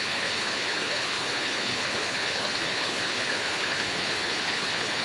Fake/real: fake